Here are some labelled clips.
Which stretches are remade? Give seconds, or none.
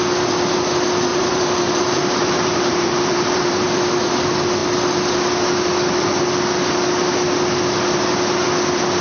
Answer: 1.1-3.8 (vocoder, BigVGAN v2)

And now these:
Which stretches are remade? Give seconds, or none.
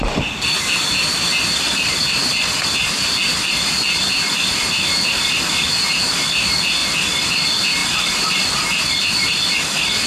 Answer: 6.8-7.3 (vocoder, BigVGAN v2); 7.8-10.1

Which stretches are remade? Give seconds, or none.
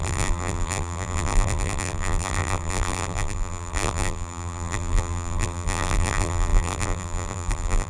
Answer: 0.0-7.9 (vocoder, BigVGAN v2)